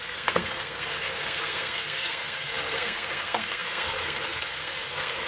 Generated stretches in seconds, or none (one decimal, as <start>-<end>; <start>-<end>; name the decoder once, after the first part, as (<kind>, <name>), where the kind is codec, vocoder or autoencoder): 0.0-5.3 (codec, SNAC)